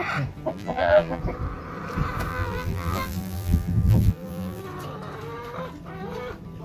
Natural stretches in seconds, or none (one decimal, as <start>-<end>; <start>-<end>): 0.0-0.5; 1.2-2.3; 4.6-6.6